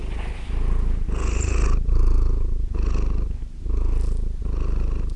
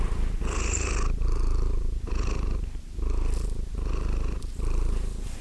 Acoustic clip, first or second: first